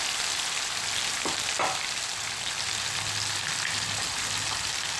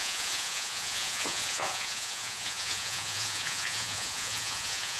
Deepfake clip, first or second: second